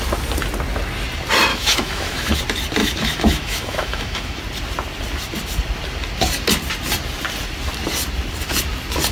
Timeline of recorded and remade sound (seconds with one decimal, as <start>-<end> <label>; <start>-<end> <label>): 0.0-1.5 recorded; 1.5-2.4 remade; 2.4-2.8 recorded; 2.8-4.4 remade; 4.4-9.1 recorded

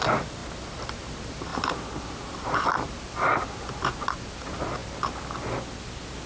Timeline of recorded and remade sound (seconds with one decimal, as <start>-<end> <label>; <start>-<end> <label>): 0.0-6.3 recorded

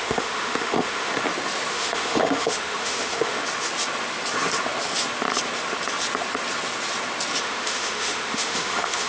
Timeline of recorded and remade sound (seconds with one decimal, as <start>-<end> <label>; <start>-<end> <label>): 0.0-1.1 remade; 1.1-1.7 recorded; 1.7-3.4 remade; 3.4-7.4 recorded; 7.4-9.1 remade

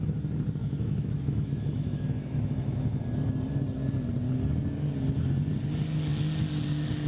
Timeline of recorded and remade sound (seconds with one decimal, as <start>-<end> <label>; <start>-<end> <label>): 0.0-0.6 recorded; 0.6-3.0 remade; 3.0-7.1 recorded